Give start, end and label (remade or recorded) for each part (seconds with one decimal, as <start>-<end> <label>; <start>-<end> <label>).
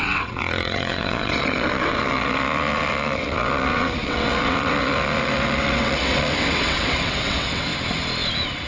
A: 0.0-7.7 remade; 7.7-8.7 recorded